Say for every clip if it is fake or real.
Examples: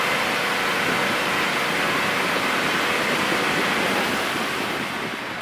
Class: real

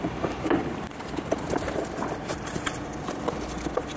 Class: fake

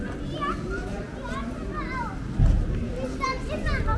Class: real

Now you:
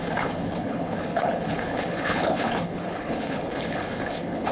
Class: fake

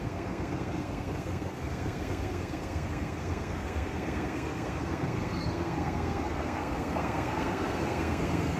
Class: fake